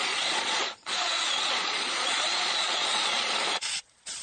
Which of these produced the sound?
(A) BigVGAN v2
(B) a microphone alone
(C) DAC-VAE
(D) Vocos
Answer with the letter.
D